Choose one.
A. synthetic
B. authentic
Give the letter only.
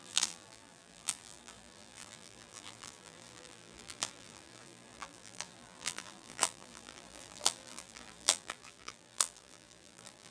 A